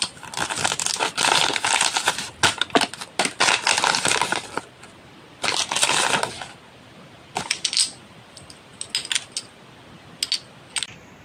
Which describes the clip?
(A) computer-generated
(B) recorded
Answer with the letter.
B